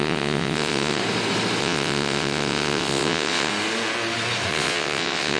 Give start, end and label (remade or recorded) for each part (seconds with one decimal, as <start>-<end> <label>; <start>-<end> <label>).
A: 0.0-1.0 remade; 1.0-1.6 recorded; 1.6-3.5 remade; 3.5-4.5 recorded; 4.5-5.4 remade